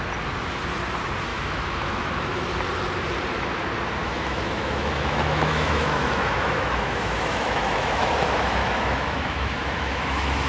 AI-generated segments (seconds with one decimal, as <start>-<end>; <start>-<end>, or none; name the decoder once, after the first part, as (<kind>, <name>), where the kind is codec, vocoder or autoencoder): 1.3-2.1 (autoencoder, DAC-VAE); 4.0-8.1; 8.6-10.5